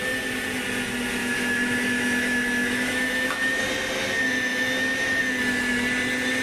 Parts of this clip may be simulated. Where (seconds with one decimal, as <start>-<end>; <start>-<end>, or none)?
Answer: 1.2-3.6; 4.5-5.2